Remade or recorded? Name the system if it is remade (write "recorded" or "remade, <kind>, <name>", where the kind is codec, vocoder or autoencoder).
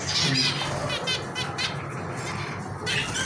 recorded